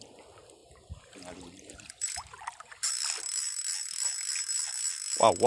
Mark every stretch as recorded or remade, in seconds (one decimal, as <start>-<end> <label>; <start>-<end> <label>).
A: 0.0-0.6 recorded; 0.6-2.9 remade; 2.9-5.5 recorded